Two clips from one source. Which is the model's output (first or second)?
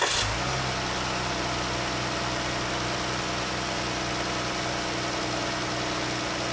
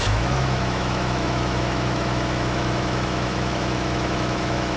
second